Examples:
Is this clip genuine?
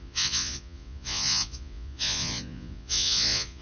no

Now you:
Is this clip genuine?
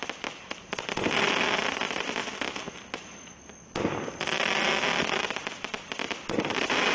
yes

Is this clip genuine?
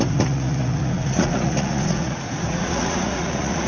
no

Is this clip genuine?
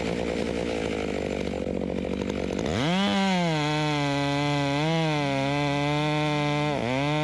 yes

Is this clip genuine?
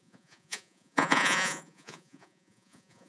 no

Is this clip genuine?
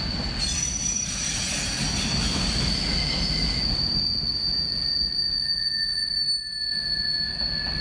yes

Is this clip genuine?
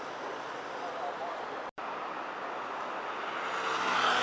yes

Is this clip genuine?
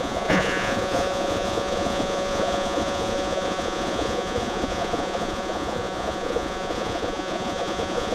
no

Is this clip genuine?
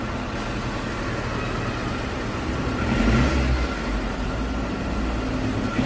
yes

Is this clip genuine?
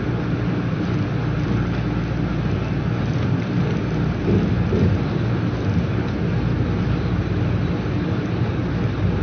yes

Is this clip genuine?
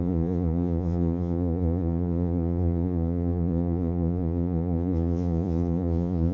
no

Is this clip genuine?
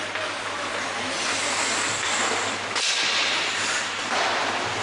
yes